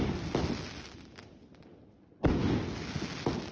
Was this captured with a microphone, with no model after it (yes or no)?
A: yes